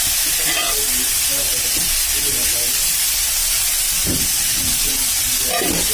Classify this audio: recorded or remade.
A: recorded